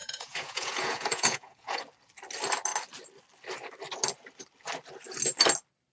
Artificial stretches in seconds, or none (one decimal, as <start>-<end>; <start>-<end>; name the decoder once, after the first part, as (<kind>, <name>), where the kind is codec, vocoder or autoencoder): 0.0-1.8 (vocoder, Vocos)